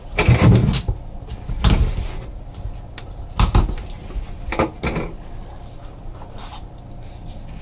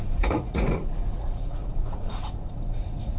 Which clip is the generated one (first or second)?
second